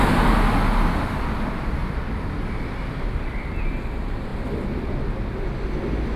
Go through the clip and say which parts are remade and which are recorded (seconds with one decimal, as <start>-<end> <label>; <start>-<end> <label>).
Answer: 0.0-6.2 recorded